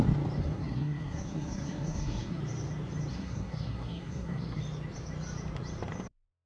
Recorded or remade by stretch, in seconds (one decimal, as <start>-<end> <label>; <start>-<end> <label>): 0.0-0.4 recorded; 0.4-2.4 remade; 2.4-3.1 recorded; 3.1-4.6 remade; 4.6-6.5 recorded